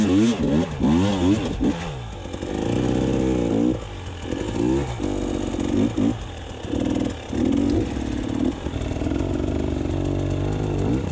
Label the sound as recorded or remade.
recorded